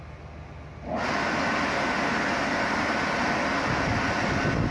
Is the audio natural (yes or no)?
yes